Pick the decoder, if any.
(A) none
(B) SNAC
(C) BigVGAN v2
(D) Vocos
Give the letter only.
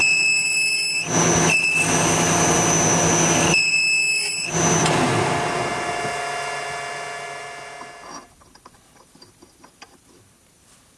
A